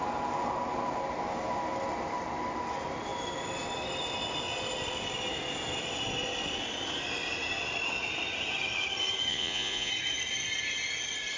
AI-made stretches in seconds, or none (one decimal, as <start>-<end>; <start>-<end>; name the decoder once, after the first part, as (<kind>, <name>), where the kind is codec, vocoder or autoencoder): 9.3-9.9 (vocoder, Vocos)